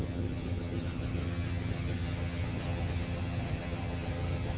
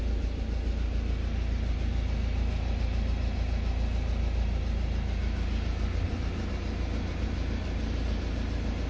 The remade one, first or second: first